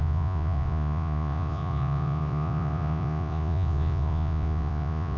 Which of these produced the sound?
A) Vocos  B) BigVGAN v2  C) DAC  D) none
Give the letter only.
A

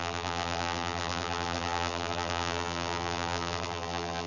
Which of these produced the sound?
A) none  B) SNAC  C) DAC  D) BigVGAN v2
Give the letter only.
D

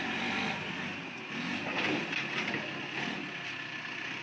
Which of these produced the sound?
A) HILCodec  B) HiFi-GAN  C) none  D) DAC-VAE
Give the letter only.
C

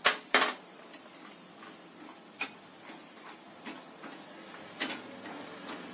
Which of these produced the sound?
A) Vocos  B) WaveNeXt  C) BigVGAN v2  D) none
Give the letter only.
D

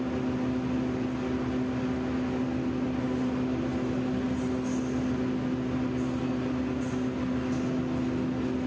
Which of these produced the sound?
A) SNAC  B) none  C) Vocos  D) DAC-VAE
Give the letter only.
B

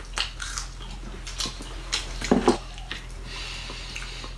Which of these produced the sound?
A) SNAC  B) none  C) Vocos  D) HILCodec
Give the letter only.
B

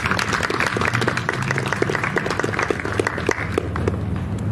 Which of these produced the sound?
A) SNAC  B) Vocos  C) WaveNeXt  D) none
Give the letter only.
D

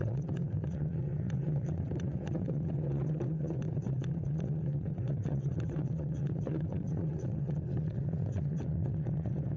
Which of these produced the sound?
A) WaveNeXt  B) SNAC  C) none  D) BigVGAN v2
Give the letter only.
A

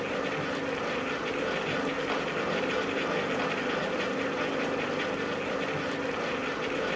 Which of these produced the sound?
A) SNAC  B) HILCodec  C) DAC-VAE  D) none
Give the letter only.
D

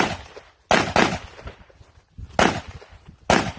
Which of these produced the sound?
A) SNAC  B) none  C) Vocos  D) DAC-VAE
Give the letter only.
B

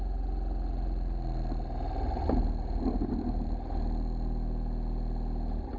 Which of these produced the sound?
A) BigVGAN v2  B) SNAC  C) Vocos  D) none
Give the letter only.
D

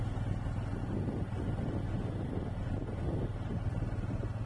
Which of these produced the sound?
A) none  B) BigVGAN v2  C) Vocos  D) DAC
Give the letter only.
A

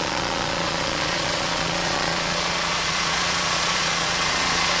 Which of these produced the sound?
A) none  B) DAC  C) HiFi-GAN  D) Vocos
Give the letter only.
D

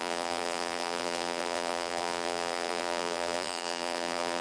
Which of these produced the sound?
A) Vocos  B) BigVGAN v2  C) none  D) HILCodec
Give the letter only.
B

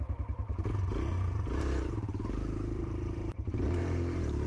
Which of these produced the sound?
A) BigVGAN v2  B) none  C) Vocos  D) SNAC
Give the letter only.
A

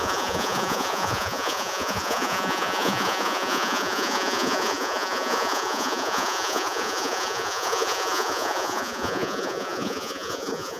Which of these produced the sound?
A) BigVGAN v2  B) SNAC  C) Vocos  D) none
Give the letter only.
C